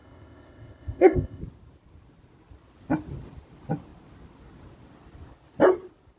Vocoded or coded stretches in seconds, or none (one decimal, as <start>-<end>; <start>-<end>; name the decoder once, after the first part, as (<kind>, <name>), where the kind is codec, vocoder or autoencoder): 0.0-1.4 (codec, ZipCodec)